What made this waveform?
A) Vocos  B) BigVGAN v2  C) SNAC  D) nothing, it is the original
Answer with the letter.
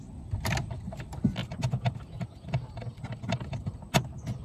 D